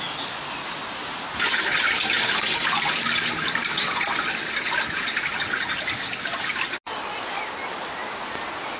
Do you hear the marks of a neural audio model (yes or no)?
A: no